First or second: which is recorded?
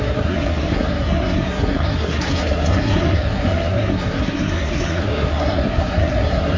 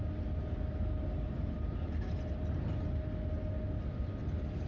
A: second